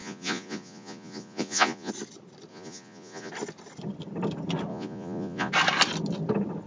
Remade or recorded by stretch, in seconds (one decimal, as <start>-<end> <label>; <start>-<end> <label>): 0.0-1.9 remade; 1.9-2.5 recorded; 2.5-3.3 remade; 3.3-4.7 recorded; 4.7-5.5 remade; 5.5-6.7 recorded